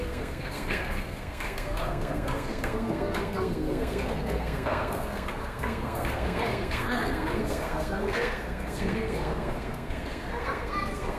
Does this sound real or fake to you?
fake